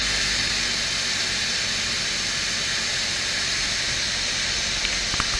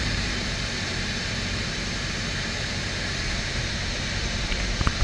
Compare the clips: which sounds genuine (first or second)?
first